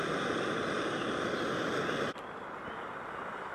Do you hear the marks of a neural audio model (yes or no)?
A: no